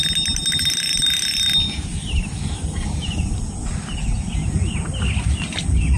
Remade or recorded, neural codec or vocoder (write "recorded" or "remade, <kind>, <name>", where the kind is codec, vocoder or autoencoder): recorded